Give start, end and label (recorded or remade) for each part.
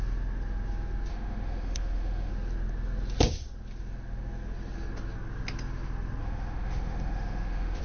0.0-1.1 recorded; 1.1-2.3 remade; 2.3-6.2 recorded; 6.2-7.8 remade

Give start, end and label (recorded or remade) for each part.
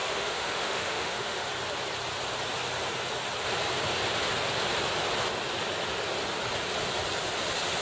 0.0-1.5 remade; 1.5-7.8 recorded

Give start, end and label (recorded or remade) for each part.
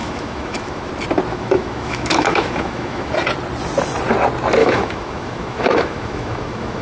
0.0-0.9 remade; 0.9-1.3 recorded; 1.3-3.1 remade; 3.1-4.6 recorded; 4.6-6.8 remade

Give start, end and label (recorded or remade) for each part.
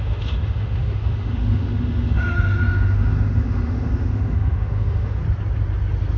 0.0-5.2 remade; 5.2-6.2 recorded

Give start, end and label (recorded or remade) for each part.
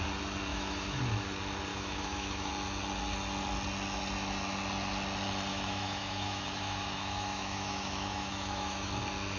0.0-0.5 recorded; 0.5-1.0 remade; 1.0-1.7 recorded; 1.7-2.5 remade; 2.5-5.5 recorded; 5.5-8.9 remade; 8.9-9.4 recorded